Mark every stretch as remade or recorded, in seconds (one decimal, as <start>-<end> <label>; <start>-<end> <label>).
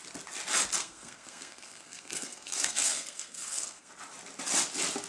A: 0.0-0.8 recorded; 0.8-3.9 remade; 3.9-5.1 recorded